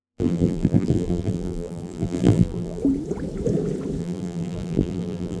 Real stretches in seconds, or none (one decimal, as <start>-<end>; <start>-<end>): 2.8-4.0